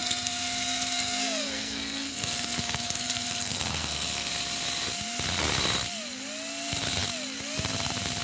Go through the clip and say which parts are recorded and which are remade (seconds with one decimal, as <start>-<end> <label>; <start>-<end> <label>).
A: 0.0-4.3 remade; 4.3-8.2 recorded